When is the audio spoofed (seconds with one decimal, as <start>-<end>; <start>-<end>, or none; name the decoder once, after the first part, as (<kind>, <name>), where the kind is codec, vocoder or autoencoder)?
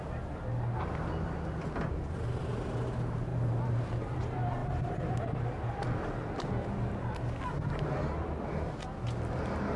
3.3-3.9 (vocoder, BigVGAN v2)